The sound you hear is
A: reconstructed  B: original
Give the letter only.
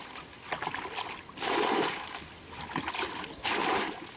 B